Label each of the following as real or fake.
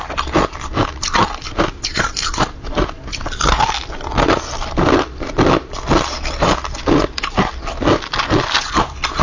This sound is real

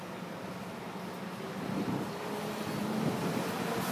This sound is fake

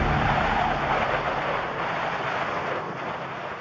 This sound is real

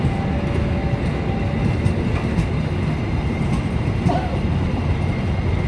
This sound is real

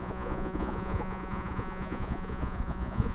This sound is fake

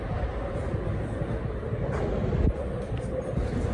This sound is real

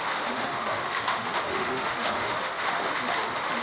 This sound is fake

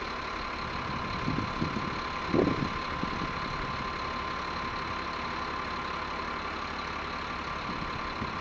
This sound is real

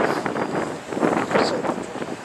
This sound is real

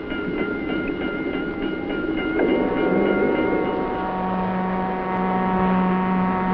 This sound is real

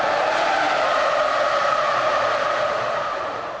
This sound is fake